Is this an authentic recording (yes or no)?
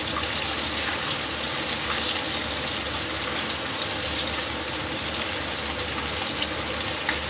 yes